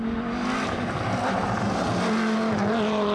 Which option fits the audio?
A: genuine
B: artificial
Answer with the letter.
A